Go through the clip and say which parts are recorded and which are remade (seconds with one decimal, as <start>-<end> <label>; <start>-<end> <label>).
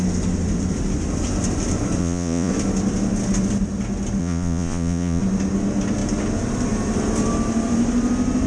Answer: 0.0-2.0 recorded; 2.0-2.5 remade; 2.5-4.2 recorded; 4.2-5.2 remade; 5.2-8.5 recorded